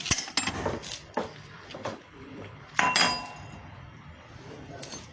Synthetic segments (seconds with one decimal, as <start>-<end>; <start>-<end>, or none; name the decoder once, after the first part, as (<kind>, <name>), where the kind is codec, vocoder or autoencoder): 1.8-2.6 (codec, HILCodec)